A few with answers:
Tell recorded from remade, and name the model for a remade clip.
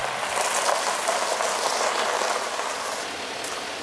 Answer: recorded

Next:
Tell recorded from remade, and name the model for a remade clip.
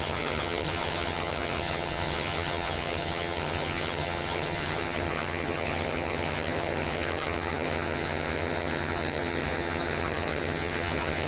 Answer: remade, vocoder, HiFi-GAN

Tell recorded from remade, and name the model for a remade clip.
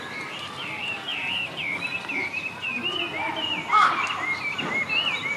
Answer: recorded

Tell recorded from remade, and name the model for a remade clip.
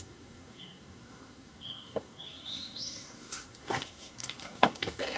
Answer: remade, codec, SNAC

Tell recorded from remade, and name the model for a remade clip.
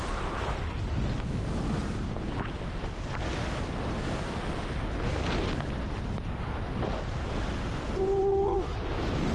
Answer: recorded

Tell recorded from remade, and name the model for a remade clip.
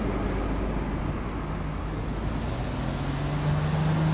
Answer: recorded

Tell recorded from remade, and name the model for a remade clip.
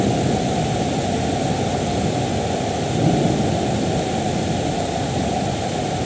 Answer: recorded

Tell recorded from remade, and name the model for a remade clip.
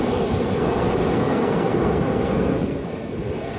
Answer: remade, codec, SNAC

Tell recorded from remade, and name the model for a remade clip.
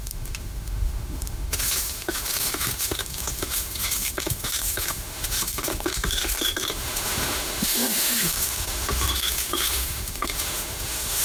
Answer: remade, autoencoder, DAC-VAE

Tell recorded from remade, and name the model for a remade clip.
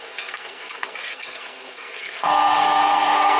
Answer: remade, codec, SNAC